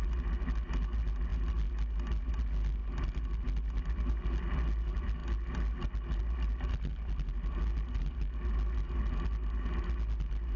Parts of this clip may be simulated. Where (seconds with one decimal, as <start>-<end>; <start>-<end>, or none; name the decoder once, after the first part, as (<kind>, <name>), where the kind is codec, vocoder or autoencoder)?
none